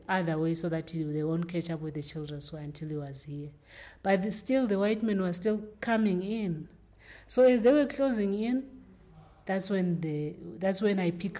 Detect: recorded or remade recorded